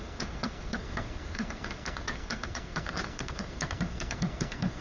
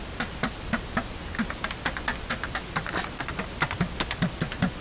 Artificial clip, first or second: first